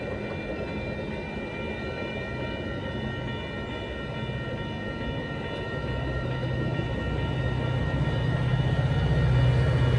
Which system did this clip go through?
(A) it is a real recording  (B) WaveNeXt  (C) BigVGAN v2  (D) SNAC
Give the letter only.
A